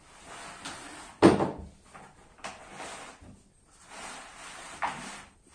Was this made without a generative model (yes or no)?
yes